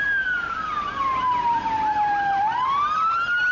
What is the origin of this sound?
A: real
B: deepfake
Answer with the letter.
A